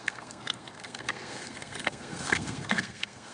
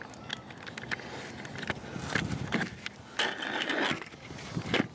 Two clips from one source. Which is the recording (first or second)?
second